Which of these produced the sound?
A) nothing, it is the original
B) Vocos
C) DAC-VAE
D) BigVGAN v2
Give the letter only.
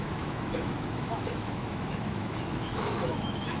C